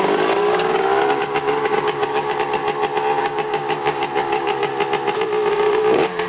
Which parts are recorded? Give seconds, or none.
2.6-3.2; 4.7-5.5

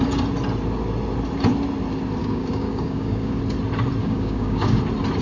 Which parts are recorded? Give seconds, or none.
0.0-2.2; 3.4-4.0; 4.8-5.2

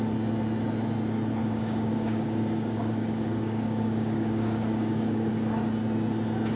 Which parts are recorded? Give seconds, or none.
0.0-1.4; 5.3-6.6

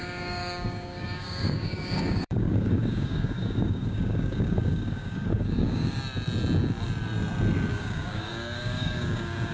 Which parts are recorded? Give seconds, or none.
6.0-7.7

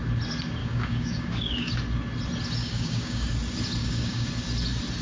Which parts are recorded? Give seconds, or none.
0.0-0.6; 1.7-2.6; 3.3-3.8; 4.3-5.0

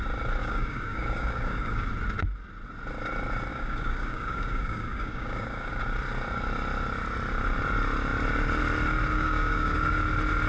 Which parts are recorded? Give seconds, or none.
0.0-0.4; 1.9-3.5; 5.7-9.1; 9.9-10.5

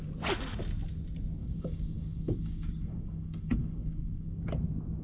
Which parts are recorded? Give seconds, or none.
0.0-1.4; 4.4-5.0

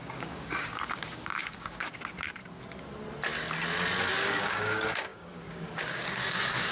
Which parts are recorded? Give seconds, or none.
2.4-4.1